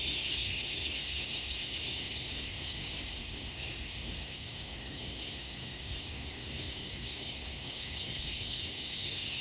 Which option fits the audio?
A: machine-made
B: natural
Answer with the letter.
A